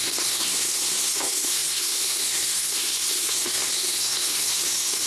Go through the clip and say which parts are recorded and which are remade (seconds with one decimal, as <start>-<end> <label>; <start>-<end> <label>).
0.0-5.1 remade